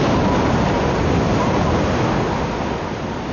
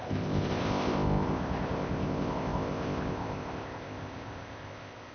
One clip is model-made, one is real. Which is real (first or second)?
first